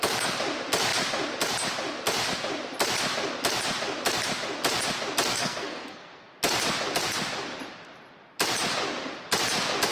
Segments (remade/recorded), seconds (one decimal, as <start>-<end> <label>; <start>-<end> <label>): 0.0-5.3 recorded; 5.3-6.3 remade; 6.3-9.9 recorded